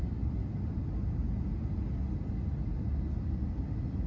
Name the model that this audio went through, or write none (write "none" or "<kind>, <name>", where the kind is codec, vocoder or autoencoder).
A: none